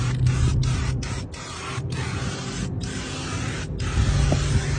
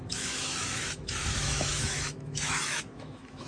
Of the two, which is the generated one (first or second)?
second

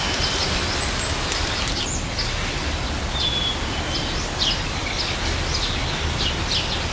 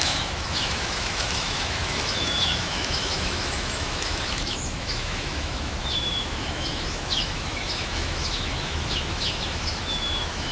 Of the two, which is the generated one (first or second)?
second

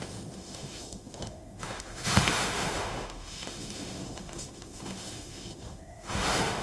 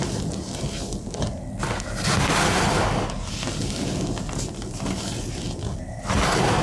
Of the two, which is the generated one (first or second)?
first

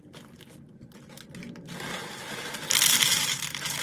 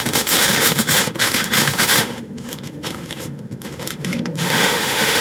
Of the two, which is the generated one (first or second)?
second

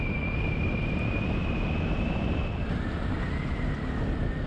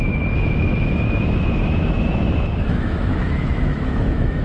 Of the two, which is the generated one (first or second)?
second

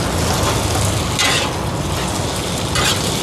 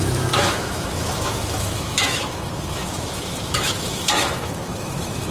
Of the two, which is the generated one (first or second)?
second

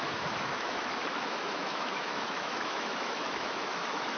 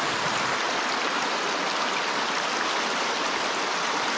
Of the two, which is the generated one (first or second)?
first